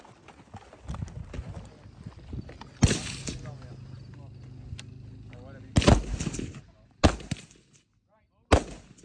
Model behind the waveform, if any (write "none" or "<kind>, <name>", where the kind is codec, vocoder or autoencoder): none